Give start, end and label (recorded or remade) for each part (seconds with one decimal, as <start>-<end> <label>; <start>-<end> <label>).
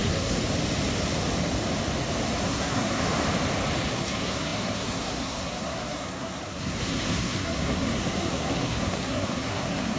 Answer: 0.0-0.4 remade; 0.4-2.4 recorded; 2.4-3.0 remade; 3.0-3.9 recorded; 3.9-10.0 remade